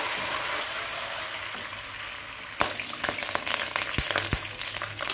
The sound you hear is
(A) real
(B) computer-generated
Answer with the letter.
A